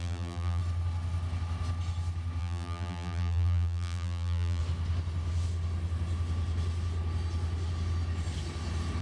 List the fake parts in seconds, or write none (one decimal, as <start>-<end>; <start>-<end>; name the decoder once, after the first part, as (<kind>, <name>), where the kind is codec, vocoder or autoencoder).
0.0-0.6 (vocoder, BigVGAN v2); 2.4-4.6